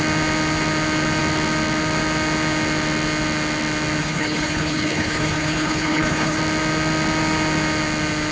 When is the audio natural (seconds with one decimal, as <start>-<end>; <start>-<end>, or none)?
0.0-4.0; 6.4-8.3